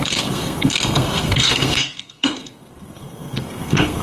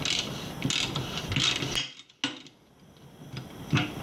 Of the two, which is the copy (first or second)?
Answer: first